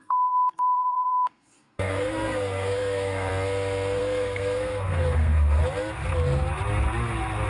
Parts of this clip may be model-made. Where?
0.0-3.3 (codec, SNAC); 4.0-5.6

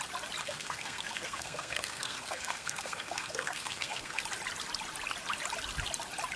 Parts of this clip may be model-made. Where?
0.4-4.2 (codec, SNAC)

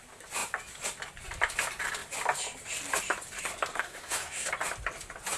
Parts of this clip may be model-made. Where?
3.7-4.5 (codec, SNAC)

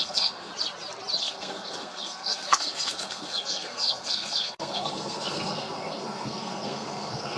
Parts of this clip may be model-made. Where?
0.0-0.5 (codec, SNAC); 1.2-7.4

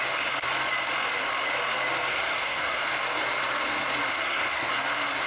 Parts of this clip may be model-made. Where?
2.1-2.8 (codec, SNAC); 4.1-4.7

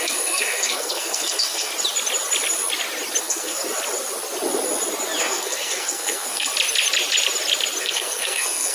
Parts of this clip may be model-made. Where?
0.0-1.7 (codec, SNAC); 3.2-3.6; 5.2-6.5; 7.8-8.7

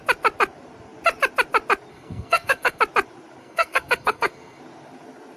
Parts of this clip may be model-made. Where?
1.9-2.8 (codec, SNAC); 3.4-4.6

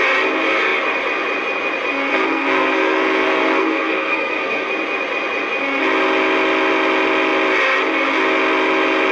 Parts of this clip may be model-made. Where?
2.1-4.7 (codec, SNAC)